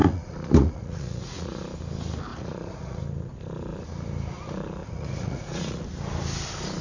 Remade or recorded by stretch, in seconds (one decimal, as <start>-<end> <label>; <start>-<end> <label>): 0.0-1.6 remade; 1.6-2.3 recorded; 2.3-3.0 remade; 3.0-4.8 recorded; 4.8-5.8 remade; 5.8-6.8 recorded